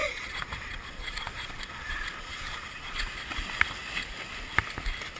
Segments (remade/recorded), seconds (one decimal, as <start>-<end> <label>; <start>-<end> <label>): 0.0-3.1 remade; 3.1-5.2 recorded